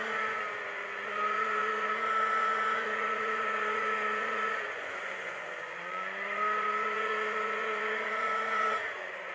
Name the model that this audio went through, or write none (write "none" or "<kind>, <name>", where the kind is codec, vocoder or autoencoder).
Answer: vocoder, Vocos